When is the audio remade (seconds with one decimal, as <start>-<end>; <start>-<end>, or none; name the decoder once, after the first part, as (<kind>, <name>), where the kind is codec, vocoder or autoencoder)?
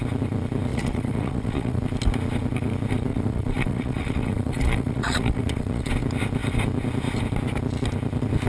0.7-1.8 (vocoder, Vocos); 3.1-5.9